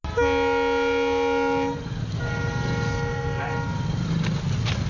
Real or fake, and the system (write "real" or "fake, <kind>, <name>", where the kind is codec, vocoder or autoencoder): real